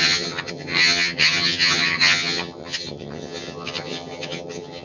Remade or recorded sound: remade